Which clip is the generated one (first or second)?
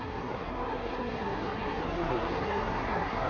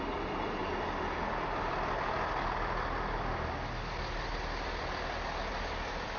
first